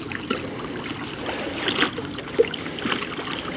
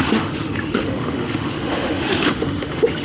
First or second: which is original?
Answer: first